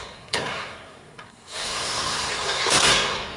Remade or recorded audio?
remade